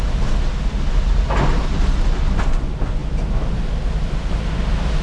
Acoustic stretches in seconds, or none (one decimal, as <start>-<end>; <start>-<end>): 0.0-5.0